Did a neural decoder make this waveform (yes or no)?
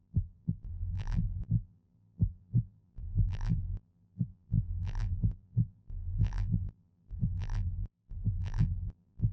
yes